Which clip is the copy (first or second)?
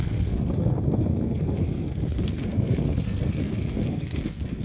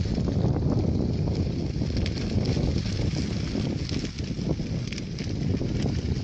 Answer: first